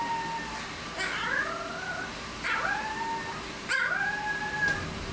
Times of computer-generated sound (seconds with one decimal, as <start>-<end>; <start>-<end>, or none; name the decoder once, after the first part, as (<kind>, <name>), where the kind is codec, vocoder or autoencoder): 2.1-5.1 (vocoder, BigVGAN v2)